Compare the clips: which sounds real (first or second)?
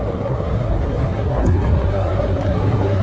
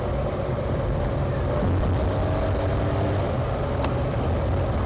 second